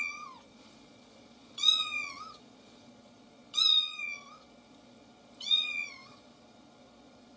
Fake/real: fake